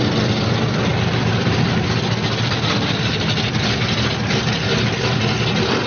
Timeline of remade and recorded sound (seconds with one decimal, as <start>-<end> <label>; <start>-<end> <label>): 0.0-5.9 recorded